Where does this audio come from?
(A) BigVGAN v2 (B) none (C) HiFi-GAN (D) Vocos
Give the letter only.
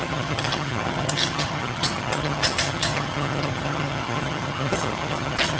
C